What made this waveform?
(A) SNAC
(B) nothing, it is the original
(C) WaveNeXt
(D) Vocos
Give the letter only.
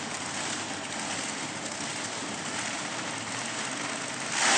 B